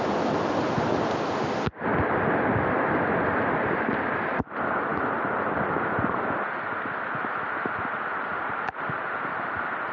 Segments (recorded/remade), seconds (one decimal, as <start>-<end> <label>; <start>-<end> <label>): 0.0-1.9 remade; 1.9-3.3 recorded; 3.3-9.9 remade